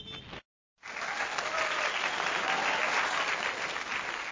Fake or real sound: real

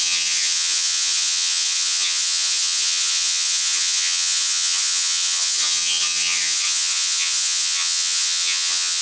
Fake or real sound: fake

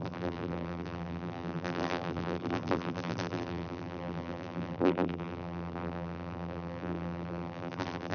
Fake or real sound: fake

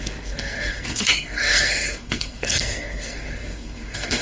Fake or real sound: fake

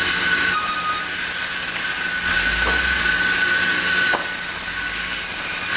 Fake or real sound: real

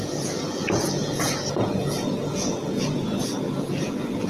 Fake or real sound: fake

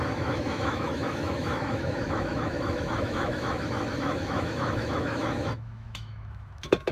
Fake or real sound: fake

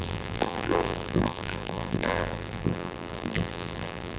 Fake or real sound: fake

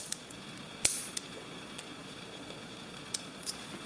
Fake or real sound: fake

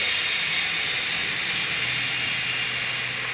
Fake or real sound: real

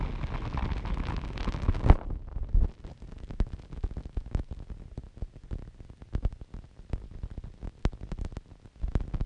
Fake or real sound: real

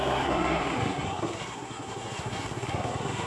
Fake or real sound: fake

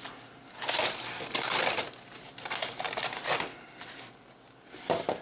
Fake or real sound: real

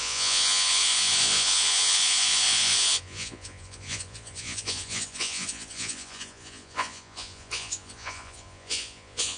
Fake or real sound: fake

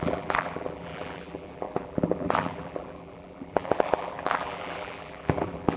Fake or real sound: fake